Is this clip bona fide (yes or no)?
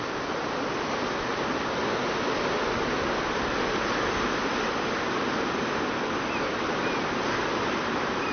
yes